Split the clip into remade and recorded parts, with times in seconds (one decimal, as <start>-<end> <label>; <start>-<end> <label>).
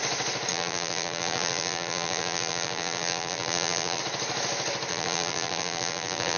0.0-0.5 recorded; 0.5-4.0 remade; 4.0-4.9 recorded; 4.9-6.4 remade